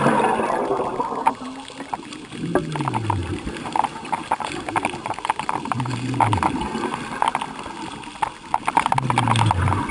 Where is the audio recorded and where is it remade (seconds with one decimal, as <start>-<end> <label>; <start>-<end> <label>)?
0.0-3.2 recorded; 3.2-4.8 remade; 4.8-9.9 recorded